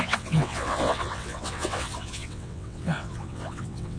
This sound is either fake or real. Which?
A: fake